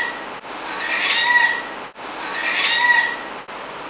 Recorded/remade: recorded